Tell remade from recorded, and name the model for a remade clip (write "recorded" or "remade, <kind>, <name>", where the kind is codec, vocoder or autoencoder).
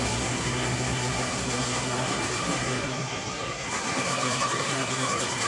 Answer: remade, codec, SNAC